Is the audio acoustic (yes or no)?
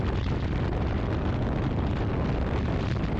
yes